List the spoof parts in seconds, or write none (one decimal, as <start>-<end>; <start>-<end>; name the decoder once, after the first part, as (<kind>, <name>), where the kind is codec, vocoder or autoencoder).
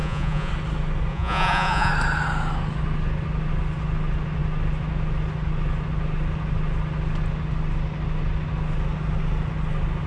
0.0-0.5 (vocoder, Vocos); 1.1-1.9